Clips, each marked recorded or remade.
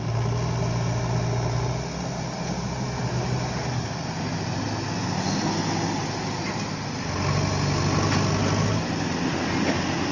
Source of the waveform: recorded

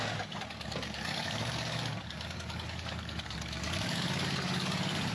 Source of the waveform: remade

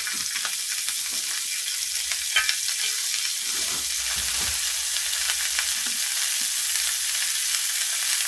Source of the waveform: recorded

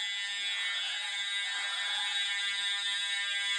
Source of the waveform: recorded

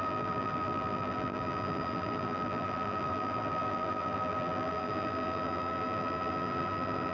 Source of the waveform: remade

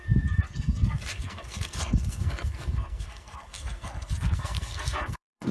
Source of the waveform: remade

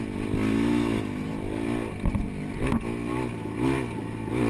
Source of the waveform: recorded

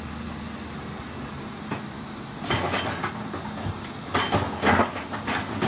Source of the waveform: recorded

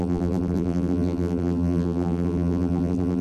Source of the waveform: remade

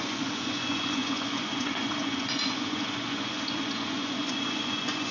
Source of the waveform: remade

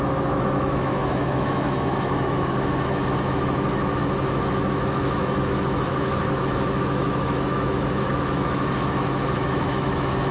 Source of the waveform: remade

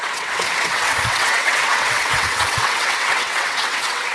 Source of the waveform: remade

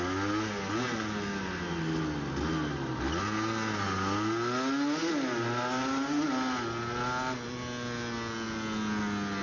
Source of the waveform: recorded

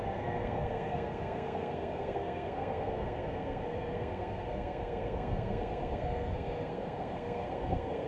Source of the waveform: remade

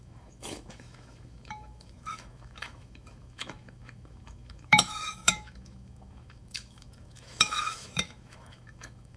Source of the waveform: remade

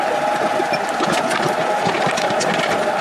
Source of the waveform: recorded